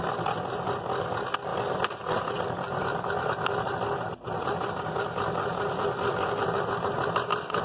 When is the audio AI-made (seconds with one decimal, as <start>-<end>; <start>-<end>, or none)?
none